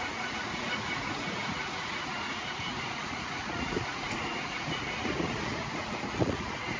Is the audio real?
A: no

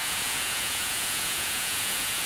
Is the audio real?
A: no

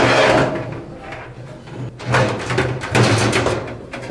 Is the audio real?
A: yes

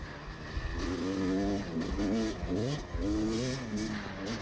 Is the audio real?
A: yes